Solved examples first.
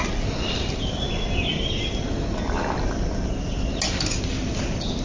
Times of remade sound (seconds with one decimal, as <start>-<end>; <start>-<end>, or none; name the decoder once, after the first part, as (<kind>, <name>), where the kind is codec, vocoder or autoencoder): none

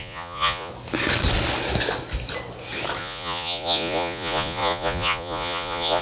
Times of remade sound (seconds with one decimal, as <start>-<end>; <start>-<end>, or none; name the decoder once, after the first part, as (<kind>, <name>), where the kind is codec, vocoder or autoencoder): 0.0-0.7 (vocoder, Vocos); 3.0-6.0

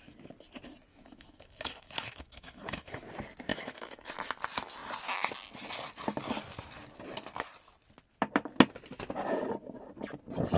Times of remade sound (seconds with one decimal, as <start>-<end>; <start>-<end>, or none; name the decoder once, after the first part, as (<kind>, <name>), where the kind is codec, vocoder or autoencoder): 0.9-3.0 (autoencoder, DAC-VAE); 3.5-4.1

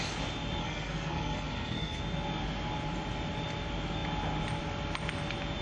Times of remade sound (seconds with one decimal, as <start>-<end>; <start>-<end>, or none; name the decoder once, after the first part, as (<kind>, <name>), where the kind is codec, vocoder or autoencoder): 0.6-2.0 (codec, SNAC)

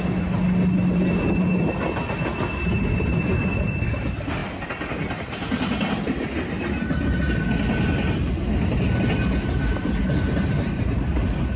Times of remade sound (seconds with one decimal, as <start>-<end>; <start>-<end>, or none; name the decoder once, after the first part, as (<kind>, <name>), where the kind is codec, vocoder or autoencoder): none

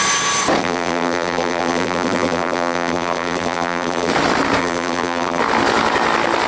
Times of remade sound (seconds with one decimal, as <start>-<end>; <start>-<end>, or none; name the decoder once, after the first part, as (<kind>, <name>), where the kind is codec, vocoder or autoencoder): 0.6-4.1 (vocoder, BigVGAN v2); 4.6-5.4

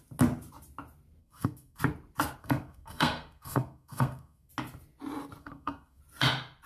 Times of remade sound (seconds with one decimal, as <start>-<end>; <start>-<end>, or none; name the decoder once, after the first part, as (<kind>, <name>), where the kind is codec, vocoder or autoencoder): 1.2-1.8 (codec, SNAC); 2.4-4.5; 5.4-6.0